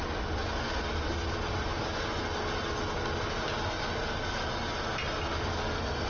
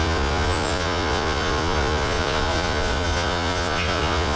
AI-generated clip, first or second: second